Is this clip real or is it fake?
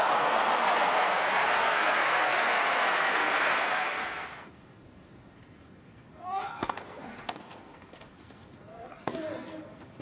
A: fake